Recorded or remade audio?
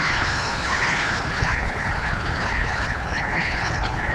remade